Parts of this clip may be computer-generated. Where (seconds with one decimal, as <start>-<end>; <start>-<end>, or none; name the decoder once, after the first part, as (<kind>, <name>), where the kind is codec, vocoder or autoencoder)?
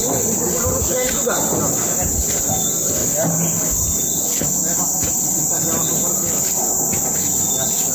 0.0-1.1 (vocoder, BigVGAN v2)